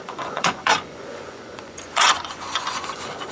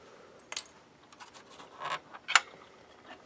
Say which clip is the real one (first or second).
second